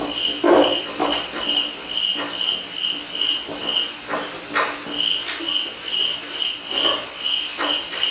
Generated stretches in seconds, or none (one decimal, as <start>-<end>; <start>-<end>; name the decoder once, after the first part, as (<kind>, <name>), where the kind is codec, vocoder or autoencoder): 0.0-2.1 (vocoder, BigVGAN v2); 2.7-3.6; 5.6-8.1